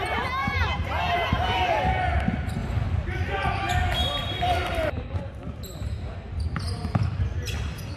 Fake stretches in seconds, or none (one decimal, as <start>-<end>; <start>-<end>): 0.4-1.9; 2.6-3.3